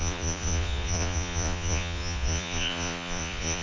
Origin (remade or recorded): remade